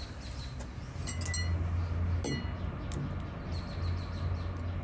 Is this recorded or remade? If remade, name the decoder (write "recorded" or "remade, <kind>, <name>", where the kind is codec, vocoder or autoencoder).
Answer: recorded